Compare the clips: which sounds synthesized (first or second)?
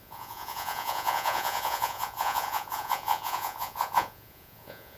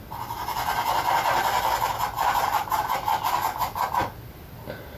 first